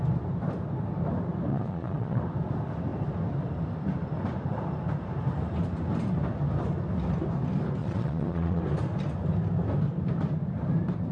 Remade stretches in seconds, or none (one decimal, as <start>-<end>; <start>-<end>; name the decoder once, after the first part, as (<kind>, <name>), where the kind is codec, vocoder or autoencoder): 1.5-2.2 (vocoder, Vocos); 7.8-8.6